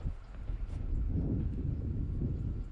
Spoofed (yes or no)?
no